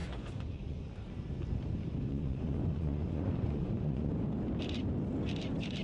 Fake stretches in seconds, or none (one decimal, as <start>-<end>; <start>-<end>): 0.0-1.0; 2.1-4.1